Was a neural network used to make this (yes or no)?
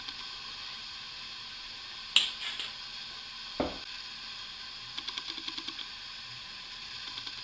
no